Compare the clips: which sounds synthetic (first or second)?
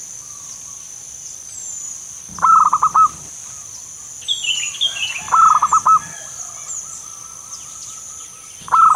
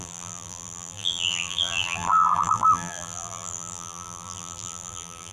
second